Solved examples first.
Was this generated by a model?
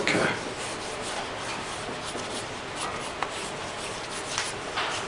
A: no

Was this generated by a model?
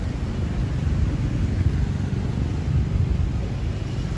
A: no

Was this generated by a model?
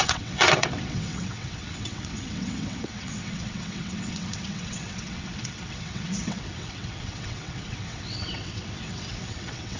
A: yes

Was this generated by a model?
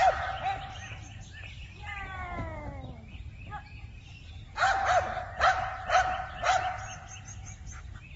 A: no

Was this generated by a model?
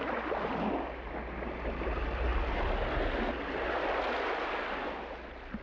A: no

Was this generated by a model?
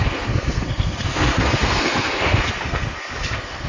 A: yes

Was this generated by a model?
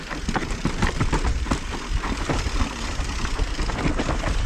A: no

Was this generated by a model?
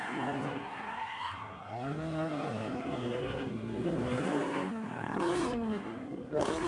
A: yes